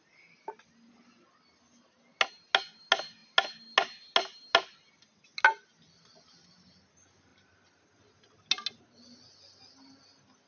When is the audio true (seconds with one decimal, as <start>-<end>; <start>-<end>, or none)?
0.0-10.5